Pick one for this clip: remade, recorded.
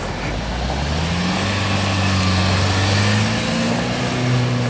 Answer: recorded